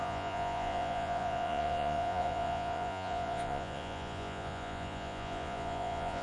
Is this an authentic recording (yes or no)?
no